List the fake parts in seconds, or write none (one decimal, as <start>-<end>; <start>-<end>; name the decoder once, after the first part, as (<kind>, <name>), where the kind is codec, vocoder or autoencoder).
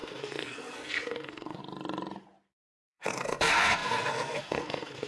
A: 0.0-1.6 (codec, SNAC); 2.6-5.1